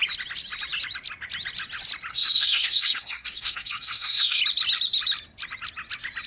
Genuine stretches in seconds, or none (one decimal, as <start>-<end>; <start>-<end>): 0.0-2.1; 4.4-6.3